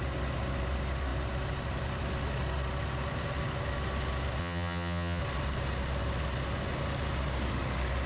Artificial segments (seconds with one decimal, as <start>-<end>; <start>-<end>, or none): 4.4-5.2